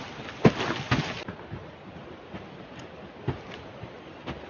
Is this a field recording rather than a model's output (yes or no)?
yes